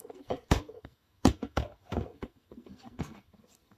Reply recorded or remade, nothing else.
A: remade